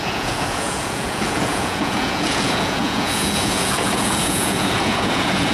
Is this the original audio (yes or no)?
no